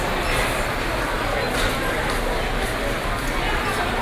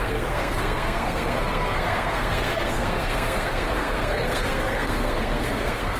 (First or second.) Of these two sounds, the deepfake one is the second